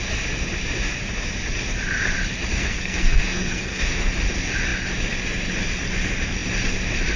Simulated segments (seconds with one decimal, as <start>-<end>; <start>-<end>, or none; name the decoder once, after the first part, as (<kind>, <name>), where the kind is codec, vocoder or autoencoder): 2.5-4.1 (codec, SNAC)